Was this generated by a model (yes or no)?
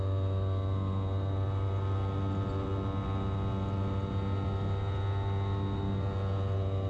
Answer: no